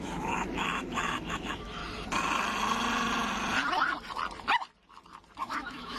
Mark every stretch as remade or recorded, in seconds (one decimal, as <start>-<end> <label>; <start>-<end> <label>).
0.0-1.8 remade; 1.8-5.4 recorded; 5.4-6.0 remade